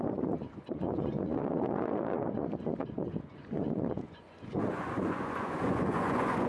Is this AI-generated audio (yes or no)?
yes